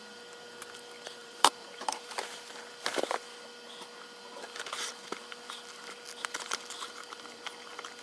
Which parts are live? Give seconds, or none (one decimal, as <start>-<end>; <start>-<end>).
0.0-1.2; 2.1-8.0